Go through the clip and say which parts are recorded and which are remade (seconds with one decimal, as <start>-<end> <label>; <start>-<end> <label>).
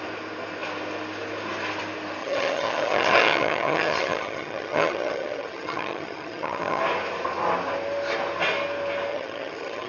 0.0-2.2 recorded; 2.2-6.8 remade; 6.8-9.1 recorded; 9.1-9.9 remade